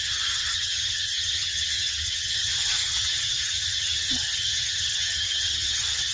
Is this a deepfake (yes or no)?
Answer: yes